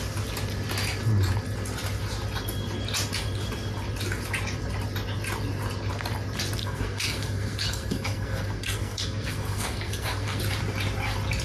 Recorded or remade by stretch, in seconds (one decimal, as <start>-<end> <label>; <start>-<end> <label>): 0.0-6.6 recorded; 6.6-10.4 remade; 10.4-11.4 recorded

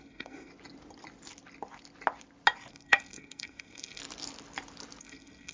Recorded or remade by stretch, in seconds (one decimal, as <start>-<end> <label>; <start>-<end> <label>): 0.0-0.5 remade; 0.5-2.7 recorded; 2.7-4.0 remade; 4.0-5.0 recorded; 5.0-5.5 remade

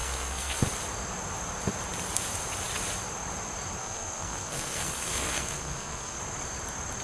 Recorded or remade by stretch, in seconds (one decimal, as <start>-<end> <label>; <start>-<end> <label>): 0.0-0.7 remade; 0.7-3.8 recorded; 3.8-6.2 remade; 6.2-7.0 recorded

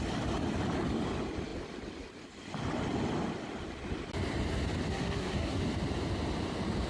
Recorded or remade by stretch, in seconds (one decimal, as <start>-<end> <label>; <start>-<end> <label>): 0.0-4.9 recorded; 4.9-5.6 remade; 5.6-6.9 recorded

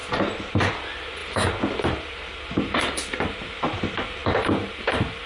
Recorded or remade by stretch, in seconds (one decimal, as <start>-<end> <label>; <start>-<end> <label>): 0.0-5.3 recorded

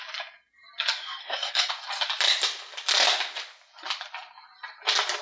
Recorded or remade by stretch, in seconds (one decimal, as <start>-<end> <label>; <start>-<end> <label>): 0.0-1.2 recorded; 1.2-1.7 remade; 1.7-5.2 recorded